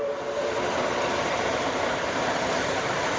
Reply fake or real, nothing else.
fake